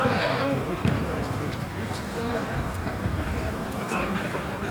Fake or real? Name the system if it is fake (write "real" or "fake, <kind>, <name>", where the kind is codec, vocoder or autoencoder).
fake, codec, DAC